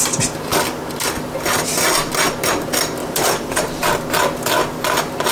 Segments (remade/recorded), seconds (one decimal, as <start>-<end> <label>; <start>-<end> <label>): 0.0-3.0 recorded; 3.0-4.0 remade; 4.0-5.3 recorded